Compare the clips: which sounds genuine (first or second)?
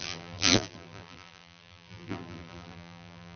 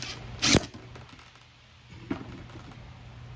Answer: second